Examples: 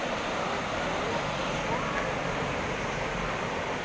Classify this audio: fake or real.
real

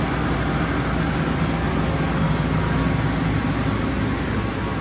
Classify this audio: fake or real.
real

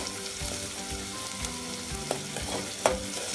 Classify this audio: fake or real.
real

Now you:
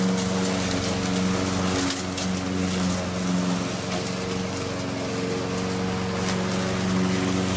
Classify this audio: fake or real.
real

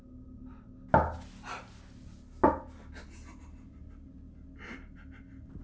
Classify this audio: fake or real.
real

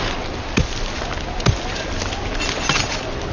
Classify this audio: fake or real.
real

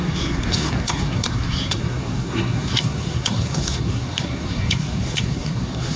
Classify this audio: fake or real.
fake